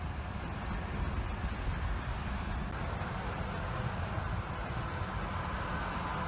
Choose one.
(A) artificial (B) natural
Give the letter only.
B